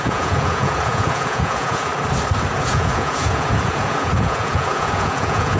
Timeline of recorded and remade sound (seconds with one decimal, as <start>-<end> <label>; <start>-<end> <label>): 0.0-1.9 remade; 1.9-2.6 recorded; 2.6-5.6 remade